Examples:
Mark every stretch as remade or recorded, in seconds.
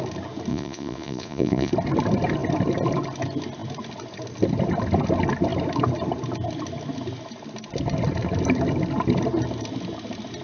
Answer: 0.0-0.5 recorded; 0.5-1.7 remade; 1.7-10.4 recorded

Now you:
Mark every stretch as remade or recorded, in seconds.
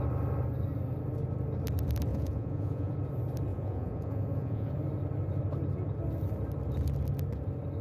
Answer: 0.0-2.1 recorded; 2.1-2.9 remade; 2.9-3.5 recorded; 3.5-4.7 remade; 4.7-7.8 recorded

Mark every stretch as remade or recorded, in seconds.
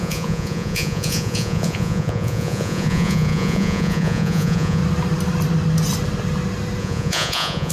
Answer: 0.0-4.8 remade; 4.8-6.8 recorded; 6.8-7.7 remade